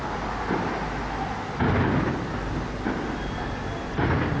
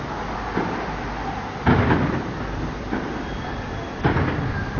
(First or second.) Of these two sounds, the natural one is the first